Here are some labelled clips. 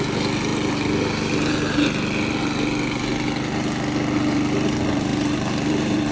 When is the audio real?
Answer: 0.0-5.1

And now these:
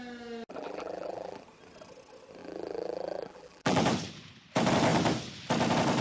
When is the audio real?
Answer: 0.0-0.6; 1.4-2.4; 3.8-6.0

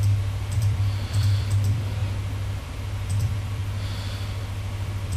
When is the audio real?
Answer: 2.0-3.2; 3.6-4.4

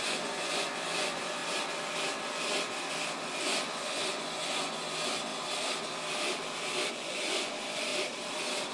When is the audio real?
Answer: 1.4-3.4; 5.3-6.9; 7.9-8.7

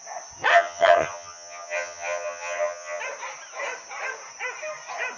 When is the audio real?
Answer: 0.0-0.5; 3.0-5.2

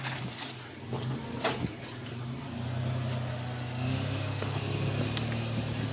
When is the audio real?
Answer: 0.0-3.3; 4.6-5.9